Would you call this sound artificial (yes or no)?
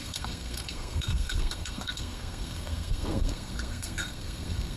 yes